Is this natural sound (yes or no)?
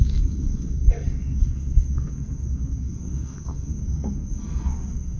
no